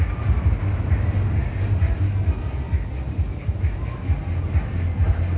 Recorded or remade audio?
recorded